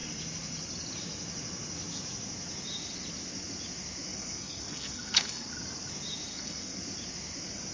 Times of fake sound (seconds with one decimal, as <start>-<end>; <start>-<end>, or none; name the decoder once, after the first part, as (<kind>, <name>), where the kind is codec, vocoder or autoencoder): 4.1-5.5 (codec, SNAC); 6.3-6.8